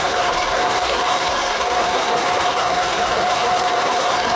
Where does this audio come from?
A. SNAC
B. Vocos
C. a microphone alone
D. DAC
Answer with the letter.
A